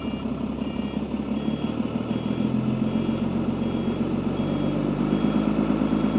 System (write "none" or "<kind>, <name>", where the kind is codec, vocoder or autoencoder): none